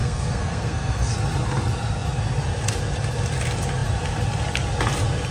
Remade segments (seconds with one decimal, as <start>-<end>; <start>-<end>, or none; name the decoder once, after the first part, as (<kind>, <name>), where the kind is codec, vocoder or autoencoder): 0.0-1.1 (codec, SNAC)